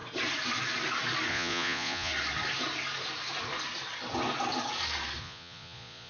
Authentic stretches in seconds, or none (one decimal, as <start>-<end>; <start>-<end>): 0.0-1.3; 2.1-5.2